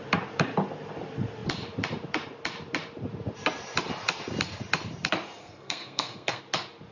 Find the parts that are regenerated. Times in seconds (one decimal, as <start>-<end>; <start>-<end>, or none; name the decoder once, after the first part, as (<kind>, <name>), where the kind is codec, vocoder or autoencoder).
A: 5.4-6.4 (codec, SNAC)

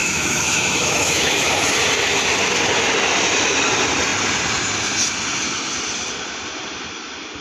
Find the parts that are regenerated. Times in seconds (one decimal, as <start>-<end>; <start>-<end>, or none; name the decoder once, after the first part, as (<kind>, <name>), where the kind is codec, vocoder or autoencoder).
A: 0.0-1.5 (autoencoder, DAC-VAE)

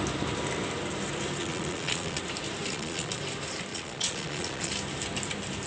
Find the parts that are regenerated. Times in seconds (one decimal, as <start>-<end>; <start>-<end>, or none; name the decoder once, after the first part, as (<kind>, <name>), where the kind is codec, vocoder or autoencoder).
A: 1.4-2.2 (vocoder, Vocos); 2.7-3.2; 3.7-4.7

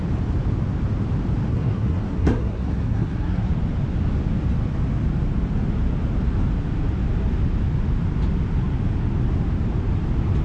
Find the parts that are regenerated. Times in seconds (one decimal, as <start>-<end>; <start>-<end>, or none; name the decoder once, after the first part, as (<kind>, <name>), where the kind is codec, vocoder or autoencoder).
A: 1.5-3.5 (codec, SNAC)

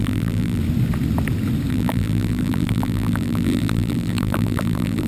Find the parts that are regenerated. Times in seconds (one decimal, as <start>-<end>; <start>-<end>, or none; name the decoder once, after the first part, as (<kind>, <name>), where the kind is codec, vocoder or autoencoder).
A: 0.0-0.6 (vocoder, BigVGAN v2); 1.7-5.1